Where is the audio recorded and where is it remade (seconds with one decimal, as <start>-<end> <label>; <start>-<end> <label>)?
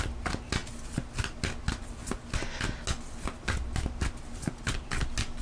0.0-5.4 recorded